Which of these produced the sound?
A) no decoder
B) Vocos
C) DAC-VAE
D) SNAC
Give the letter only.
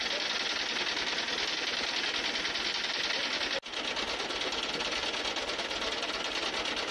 A